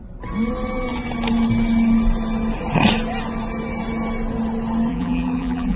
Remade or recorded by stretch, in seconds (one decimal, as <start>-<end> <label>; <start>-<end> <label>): 0.0-4.9 recorded; 4.9-5.8 remade